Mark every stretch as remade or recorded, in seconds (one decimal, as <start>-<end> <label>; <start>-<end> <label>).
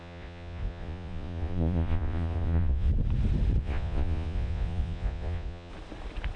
0.0-2.9 remade; 2.9-3.6 recorded; 3.6-5.7 remade; 5.7-6.4 recorded